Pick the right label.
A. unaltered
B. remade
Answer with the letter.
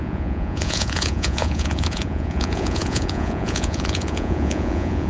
B